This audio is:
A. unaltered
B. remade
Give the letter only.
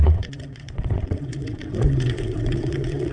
B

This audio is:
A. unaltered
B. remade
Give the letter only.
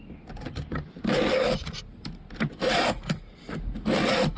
A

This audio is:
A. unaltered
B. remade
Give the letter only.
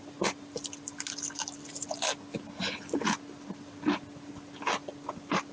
A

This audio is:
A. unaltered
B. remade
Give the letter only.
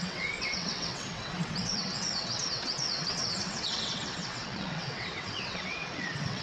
B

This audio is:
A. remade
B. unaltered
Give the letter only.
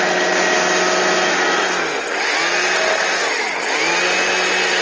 B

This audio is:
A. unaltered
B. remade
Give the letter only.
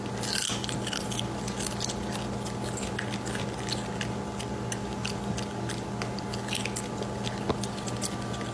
A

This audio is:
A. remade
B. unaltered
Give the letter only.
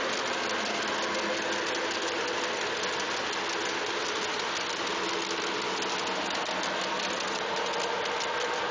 B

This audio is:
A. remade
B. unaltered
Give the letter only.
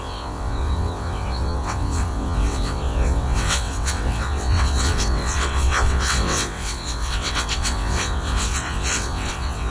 A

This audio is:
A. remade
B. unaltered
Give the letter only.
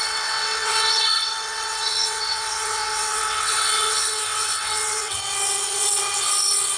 A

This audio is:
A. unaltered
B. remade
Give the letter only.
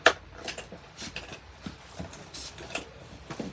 A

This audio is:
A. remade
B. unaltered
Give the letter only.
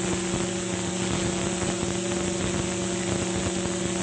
B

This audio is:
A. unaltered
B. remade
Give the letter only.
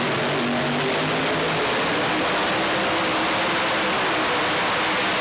A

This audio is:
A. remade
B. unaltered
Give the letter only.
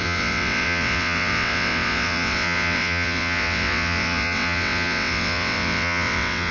A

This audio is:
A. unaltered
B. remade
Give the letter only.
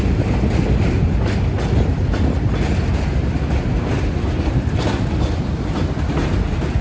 A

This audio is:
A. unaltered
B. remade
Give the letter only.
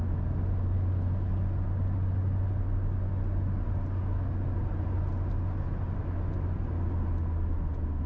A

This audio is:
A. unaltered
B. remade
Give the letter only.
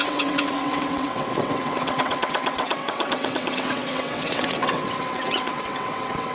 B